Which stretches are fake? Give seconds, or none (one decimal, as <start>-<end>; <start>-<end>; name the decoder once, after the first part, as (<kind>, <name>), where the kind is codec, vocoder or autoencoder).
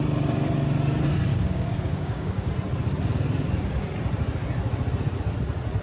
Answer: 1.3-2.5 (codec, DAC)